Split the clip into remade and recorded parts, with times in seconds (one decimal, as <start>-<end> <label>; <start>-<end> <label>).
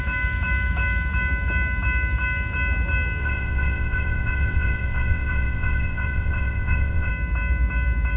0.0-3.2 recorded; 3.2-7.1 remade; 7.1-8.2 recorded